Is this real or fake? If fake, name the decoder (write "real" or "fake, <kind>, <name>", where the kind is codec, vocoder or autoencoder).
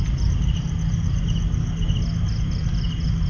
real